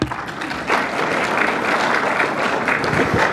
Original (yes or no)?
yes